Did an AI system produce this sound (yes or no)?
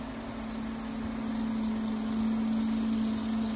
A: no